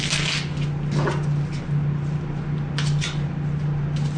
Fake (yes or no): no